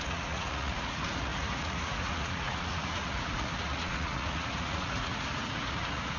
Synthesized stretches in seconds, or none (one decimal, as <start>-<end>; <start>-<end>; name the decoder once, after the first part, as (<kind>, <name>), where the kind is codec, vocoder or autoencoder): 0.0-6.2 (vocoder, Vocos)